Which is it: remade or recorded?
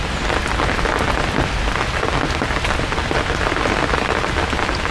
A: recorded